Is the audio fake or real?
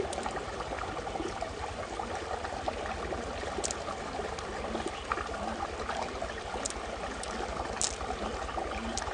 real